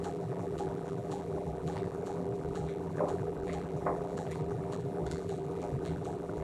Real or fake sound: fake